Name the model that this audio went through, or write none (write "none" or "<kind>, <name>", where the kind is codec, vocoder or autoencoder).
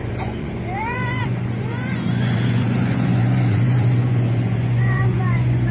vocoder, Vocos